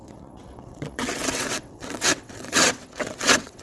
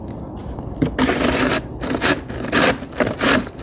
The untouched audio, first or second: second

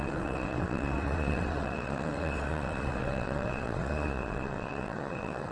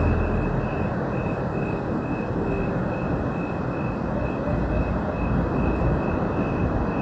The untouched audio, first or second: second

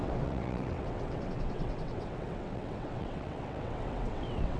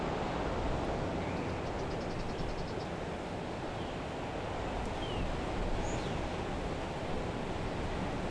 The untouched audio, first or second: second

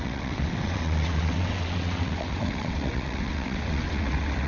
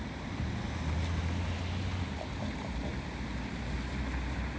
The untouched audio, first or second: second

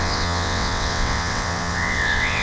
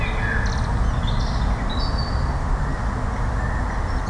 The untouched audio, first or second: second